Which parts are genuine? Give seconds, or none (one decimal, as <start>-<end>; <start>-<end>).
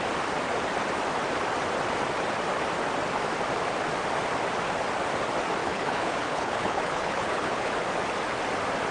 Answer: 0.0-5.6; 7.7-8.9